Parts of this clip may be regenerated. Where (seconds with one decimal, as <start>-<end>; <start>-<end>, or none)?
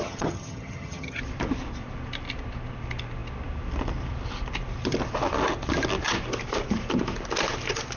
0.0-1.2